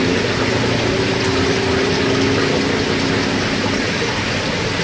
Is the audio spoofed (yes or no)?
no